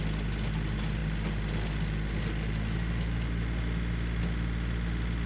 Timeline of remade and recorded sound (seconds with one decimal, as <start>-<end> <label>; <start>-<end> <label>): 0.0-5.3 recorded